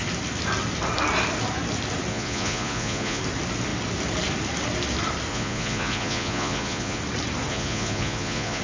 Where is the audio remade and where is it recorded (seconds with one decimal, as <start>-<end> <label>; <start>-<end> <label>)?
0.0-2.1 recorded; 2.1-3.2 remade; 3.2-5.3 recorded; 5.3-7.0 remade; 7.0-7.5 recorded; 7.5-8.6 remade